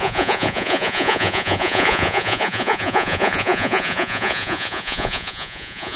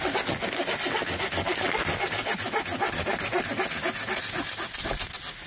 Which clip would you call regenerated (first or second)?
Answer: first